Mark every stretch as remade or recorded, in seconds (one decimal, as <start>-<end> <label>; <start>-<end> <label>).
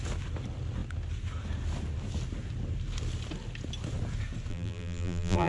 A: 0.0-4.5 recorded; 4.5-5.5 remade